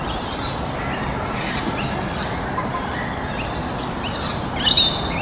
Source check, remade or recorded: recorded